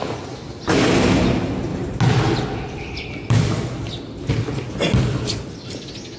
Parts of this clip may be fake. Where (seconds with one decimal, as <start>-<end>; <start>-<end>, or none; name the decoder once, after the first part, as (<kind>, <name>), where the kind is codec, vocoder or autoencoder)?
none